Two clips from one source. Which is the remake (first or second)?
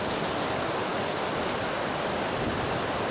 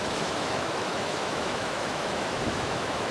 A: second